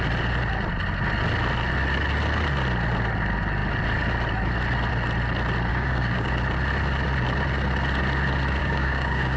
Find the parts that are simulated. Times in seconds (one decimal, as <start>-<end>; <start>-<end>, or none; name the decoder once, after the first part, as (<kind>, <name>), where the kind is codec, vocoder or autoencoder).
5.7-6.3 (codec, DAC); 8.6-9.4